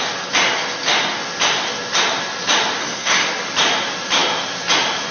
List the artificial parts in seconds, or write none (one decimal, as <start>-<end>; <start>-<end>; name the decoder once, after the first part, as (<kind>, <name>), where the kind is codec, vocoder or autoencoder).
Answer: 2.8-3.3 (codec, SNAC)